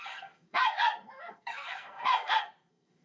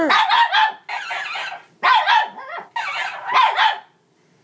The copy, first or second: first